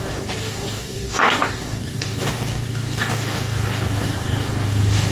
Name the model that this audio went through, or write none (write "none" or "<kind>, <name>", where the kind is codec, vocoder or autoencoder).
codec, DAC